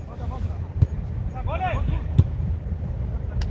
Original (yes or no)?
yes